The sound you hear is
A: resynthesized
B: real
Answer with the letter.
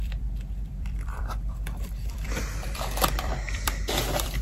A